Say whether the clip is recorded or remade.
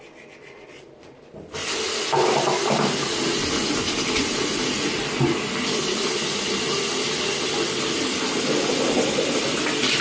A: recorded